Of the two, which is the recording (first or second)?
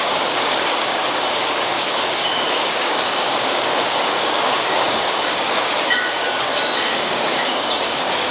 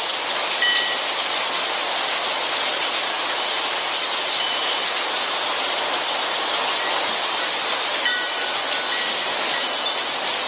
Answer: second